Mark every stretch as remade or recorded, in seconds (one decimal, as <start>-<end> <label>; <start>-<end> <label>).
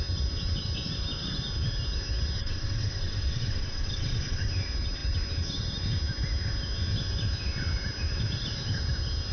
0.0-2.4 recorded; 2.4-4.5 remade; 4.5-9.3 recorded